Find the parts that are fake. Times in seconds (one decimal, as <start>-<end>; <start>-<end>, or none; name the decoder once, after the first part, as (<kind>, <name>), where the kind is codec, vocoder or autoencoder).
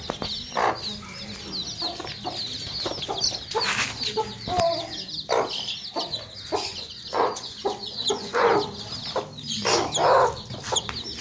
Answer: 6.7-8.5 (vocoder, Vocos)